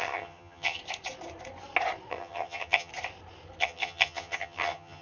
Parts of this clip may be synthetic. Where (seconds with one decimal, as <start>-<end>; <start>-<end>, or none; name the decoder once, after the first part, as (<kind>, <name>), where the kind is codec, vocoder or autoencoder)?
0.0-0.8 (vocoder, HiFi-GAN); 2.1-2.9; 3.6-5.0